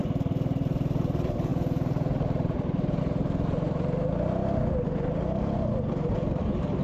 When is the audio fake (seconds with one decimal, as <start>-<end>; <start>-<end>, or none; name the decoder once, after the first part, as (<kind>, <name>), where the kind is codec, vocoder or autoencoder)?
1.0-4.4 (vocoder, BigVGAN v2)